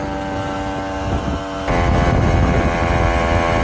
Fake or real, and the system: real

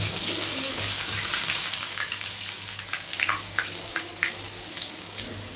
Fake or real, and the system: fake, codec, DAC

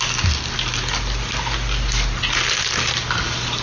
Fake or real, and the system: real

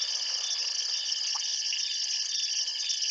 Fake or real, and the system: real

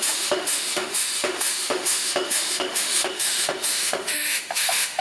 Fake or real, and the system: fake, autoencoder, DAC-VAE